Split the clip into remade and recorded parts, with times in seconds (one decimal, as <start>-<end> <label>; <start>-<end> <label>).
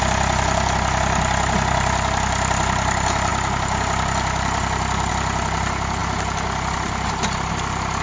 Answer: 0.0-8.0 recorded